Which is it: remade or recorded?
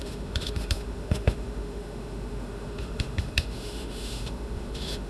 remade